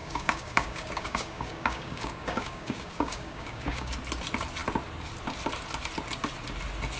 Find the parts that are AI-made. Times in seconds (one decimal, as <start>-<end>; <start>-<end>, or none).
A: 0.0-3.9

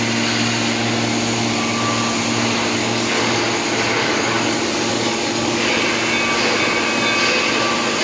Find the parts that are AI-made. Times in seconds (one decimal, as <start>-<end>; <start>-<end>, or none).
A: 2.8-3.4; 4.0-4.5; 4.9-5.7

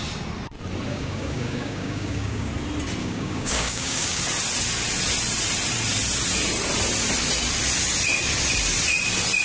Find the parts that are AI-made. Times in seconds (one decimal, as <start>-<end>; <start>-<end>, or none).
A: 0.9-2.5; 3.0-4.2

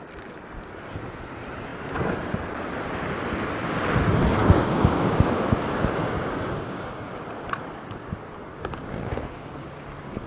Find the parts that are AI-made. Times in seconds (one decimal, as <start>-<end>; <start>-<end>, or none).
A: 4.4-7.1; 8.4-9.7